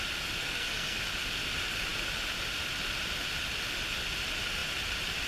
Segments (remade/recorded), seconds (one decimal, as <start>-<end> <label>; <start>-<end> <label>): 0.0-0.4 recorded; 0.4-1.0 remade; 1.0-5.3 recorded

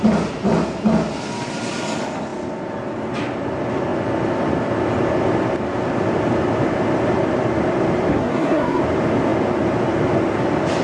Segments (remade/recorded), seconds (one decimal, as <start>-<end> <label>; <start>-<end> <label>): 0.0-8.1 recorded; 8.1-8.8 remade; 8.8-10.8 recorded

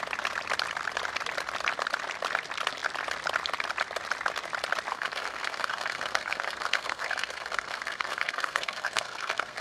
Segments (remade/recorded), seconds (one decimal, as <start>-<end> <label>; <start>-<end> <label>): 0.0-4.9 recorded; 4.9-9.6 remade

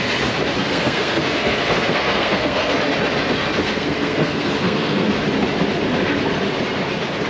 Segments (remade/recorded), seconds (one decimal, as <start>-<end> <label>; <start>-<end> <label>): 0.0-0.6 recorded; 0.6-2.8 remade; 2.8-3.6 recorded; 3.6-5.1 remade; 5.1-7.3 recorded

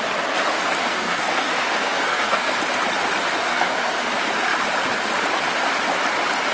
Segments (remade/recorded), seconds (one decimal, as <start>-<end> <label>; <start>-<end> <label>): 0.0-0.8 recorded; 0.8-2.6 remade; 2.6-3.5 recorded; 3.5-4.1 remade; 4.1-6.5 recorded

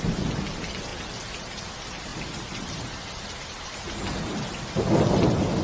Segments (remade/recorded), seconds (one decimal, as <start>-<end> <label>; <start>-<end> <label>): 0.0-5.6 recorded

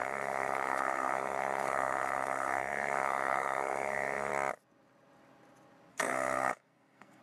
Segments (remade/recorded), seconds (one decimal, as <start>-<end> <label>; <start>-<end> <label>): 0.0-4.3 remade; 4.3-5.9 recorded; 5.9-7.2 remade